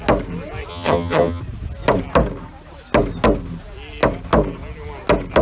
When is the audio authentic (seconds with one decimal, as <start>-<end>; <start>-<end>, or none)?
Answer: 0.0-0.7; 1.4-5.4

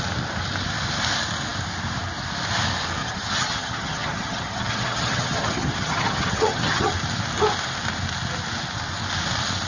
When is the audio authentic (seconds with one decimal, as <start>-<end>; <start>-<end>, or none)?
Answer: 0.0-3.0; 6.9-9.7

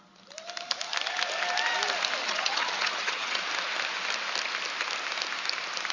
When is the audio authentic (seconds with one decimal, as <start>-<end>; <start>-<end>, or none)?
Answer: 0.0-2.2; 3.4-5.9